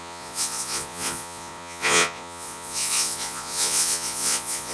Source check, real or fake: fake